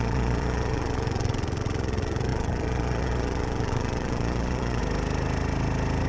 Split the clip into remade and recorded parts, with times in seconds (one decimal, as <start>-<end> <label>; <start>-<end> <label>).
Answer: 0.0-4.8 remade; 4.8-6.1 recorded